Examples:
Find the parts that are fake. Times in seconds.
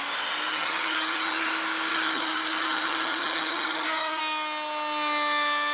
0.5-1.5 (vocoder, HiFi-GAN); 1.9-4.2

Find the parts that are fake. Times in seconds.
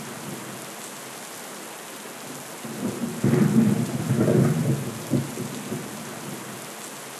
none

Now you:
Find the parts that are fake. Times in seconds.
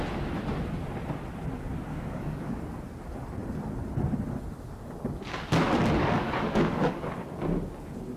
1.9-2.6 (codec, DAC); 6.0-7.1